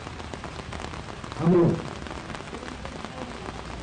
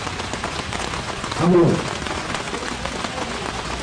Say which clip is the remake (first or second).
second